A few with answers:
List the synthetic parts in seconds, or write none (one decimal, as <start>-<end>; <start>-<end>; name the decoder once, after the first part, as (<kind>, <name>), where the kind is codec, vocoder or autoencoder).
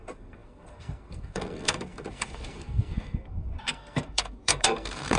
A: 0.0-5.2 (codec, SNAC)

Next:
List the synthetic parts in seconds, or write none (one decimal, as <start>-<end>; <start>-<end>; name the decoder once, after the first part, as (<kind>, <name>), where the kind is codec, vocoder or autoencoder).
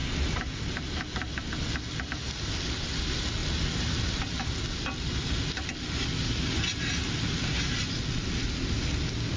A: none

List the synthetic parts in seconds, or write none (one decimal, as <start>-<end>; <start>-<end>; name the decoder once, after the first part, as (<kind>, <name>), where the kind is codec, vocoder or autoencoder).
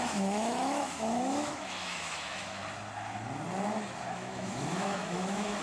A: 0.0-2.6 (autoencoder, DAC-VAE); 4.1-5.6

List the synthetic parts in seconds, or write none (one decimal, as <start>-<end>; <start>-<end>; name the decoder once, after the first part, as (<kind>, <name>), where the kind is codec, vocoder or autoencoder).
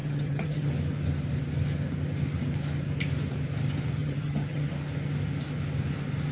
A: 0.0-0.7 (vocoder, HiFi-GAN); 4.0-4.7